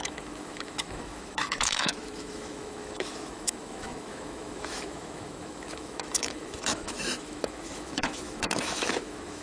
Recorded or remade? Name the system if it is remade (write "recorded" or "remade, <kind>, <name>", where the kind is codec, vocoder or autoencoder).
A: remade, autoencoder, DAC-VAE